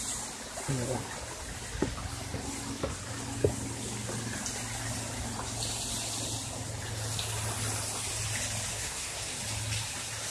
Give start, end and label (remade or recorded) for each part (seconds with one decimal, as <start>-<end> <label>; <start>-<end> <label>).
0.0-8.7 recorded; 8.7-9.4 remade; 9.4-10.3 recorded